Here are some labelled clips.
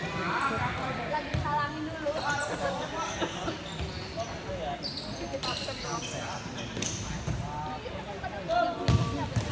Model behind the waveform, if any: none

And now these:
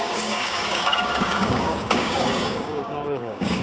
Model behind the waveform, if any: codec, DAC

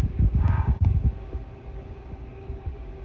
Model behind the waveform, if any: codec, DAC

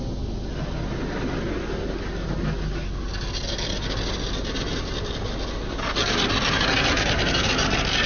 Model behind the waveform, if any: none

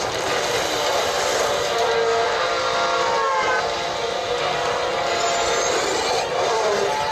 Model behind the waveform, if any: none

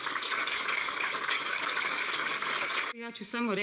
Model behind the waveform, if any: codec, DAC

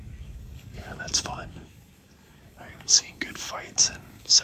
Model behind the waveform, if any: codec, DAC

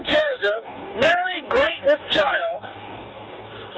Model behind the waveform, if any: codec, DAC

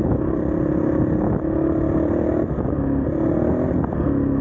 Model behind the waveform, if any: none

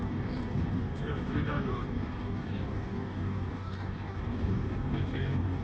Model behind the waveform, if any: codec, DAC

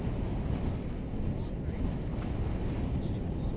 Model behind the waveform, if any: none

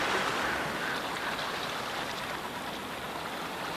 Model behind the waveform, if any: none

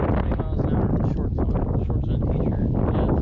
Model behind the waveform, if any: none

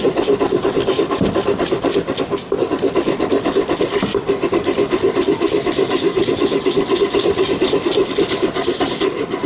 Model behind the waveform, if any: none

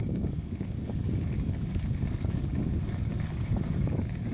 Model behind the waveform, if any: codec, DAC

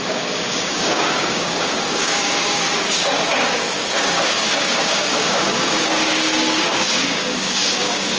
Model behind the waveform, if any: codec, DAC